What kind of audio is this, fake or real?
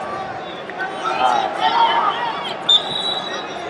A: real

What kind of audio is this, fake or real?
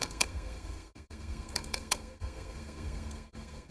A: fake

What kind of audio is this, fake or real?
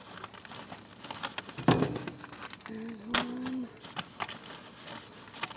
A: real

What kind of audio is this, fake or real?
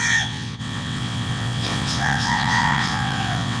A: fake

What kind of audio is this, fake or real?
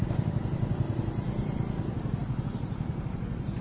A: real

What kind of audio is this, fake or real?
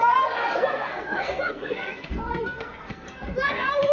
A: fake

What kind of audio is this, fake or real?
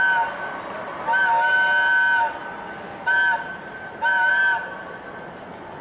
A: real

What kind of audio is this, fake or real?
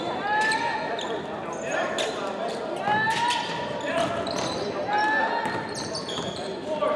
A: real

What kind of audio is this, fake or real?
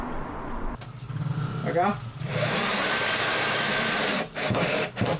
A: fake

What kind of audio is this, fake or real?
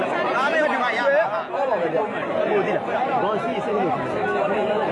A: real